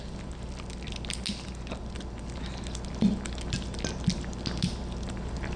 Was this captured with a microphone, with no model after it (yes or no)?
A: yes